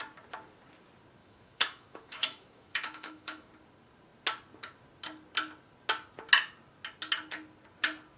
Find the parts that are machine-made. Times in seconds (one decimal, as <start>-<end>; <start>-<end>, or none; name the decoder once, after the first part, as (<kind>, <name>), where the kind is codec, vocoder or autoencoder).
1.2-3.5 (autoencoder, DAC-VAE)